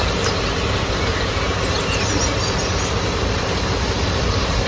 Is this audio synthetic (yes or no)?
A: no